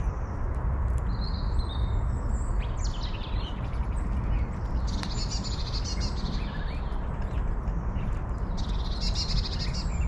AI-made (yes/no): no